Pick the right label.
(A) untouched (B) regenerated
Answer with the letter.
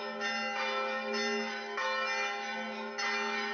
A